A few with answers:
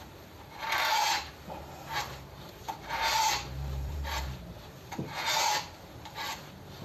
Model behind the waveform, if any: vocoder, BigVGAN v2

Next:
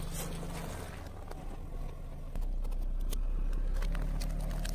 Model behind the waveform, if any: none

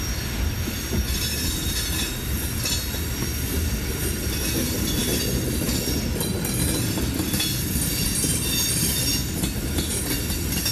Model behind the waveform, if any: none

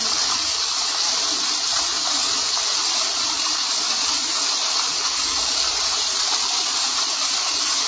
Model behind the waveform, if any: vocoder, BigVGAN v2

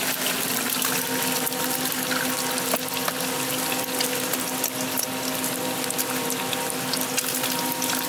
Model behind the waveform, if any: none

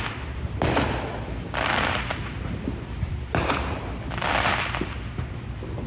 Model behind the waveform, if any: vocoder, BigVGAN v2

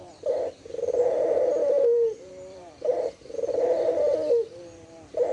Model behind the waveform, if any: vocoder, BigVGAN v2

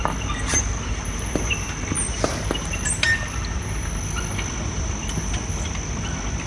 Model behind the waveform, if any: none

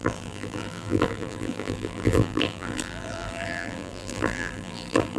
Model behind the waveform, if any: vocoder, BigVGAN v2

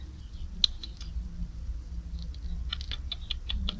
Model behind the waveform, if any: none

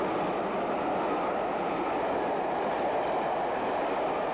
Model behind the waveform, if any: none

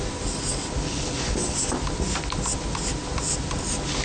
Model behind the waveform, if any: none